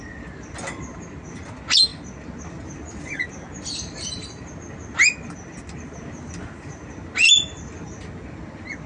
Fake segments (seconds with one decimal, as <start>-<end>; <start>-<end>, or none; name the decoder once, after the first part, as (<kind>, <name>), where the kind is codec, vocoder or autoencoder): none